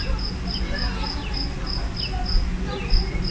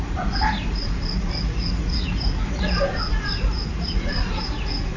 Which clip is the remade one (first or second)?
second